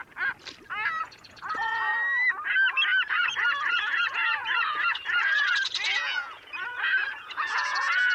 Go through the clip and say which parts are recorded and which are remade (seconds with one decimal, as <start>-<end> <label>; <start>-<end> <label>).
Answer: 0.0-1.0 recorded; 1.0-1.9 remade; 1.9-3.1 recorded; 3.1-8.1 remade